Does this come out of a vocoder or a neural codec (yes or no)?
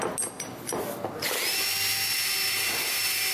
no